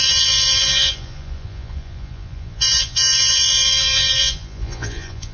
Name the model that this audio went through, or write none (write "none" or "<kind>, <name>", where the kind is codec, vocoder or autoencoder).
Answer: vocoder, Vocos